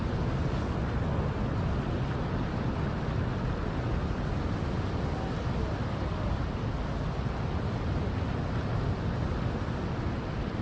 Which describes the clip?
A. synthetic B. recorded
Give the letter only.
B